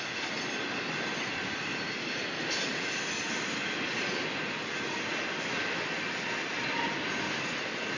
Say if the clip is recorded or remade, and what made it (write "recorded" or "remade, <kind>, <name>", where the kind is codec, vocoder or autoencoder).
recorded